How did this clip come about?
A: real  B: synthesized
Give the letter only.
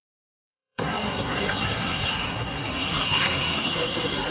B